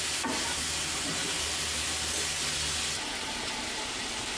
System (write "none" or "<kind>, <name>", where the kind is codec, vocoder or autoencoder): none